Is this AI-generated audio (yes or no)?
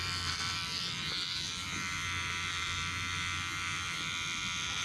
yes